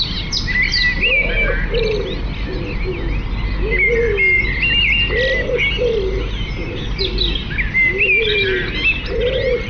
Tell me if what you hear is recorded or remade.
recorded